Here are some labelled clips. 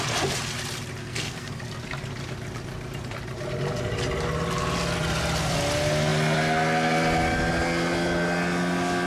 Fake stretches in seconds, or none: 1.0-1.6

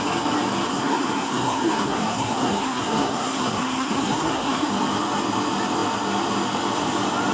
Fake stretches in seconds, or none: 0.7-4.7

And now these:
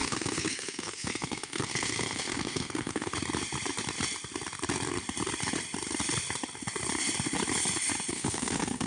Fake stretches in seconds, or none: 0.0-3.1; 8.1-8.9

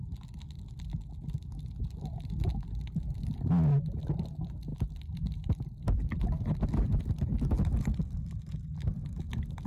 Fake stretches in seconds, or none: none